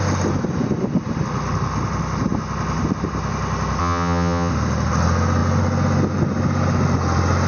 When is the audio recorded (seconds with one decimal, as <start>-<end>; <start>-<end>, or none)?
0.0-3.8; 4.5-7.5

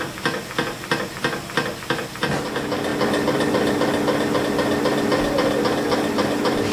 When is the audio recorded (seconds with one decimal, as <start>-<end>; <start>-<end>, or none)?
0.0-6.7

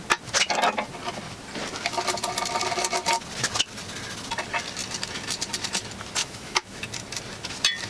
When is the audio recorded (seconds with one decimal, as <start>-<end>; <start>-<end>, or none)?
0.0-6.2; 6.8-7.9

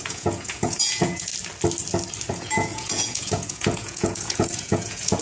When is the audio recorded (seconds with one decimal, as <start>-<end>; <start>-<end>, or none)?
1.3-2.3

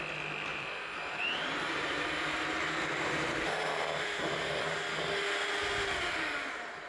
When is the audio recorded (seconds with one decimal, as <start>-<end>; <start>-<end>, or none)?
0.0-0.5; 4.6-6.9

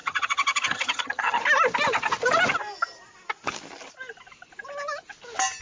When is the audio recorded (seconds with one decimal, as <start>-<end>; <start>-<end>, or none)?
1.4-5.6